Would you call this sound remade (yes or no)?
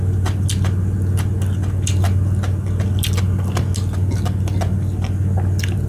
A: no